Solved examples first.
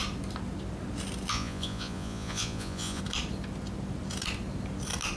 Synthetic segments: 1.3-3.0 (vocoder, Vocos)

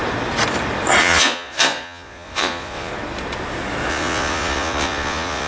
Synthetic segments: 1.0-2.9 (vocoder, Vocos); 3.9-5.5

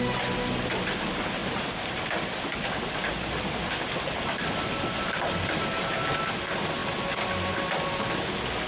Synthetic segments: none

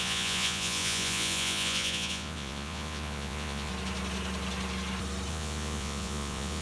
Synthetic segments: 0.0-3.7 (vocoder, Vocos); 5.3-6.6

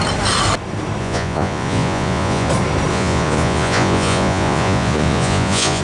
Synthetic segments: 1.0-2.5 (vocoder, Vocos); 2.9-5.8

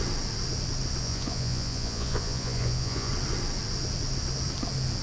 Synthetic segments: 1.0-3.1 (vocoder, Vocos)

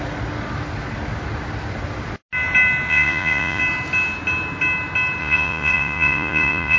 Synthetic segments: 2.9-3.6 (vocoder, Vocos); 5.2-6.8